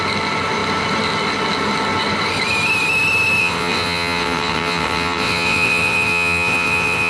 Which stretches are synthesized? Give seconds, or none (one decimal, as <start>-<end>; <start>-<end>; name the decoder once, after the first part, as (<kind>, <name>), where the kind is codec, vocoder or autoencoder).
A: 3.4-7.1 (vocoder, WaveNeXt)